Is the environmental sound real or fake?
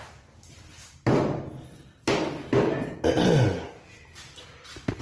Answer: real